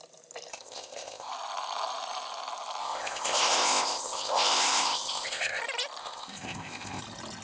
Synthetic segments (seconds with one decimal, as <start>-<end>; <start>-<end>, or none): 0.5-1.3; 2.8-5.6; 6.0-7.0